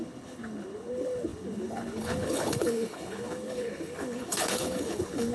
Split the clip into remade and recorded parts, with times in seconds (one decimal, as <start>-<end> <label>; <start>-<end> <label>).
0.0-5.3 remade